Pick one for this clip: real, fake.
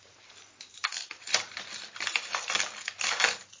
real